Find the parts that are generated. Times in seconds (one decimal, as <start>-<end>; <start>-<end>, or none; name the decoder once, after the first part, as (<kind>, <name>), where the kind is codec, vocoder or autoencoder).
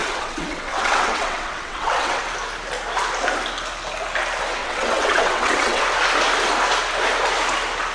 0.0-2.2 (vocoder, WaveNeXt); 4.6-5.8